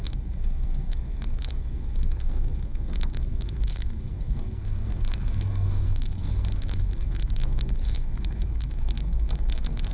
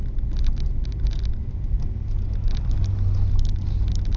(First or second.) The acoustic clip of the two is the second